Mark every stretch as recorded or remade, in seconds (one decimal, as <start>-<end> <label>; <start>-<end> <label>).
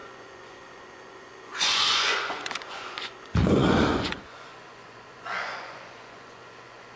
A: 0.0-7.0 remade